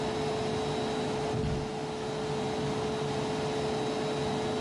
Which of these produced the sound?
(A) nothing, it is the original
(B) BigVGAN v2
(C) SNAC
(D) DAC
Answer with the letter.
A